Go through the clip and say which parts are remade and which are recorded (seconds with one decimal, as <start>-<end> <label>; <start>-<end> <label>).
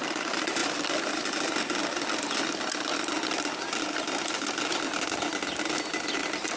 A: 0.0-6.6 recorded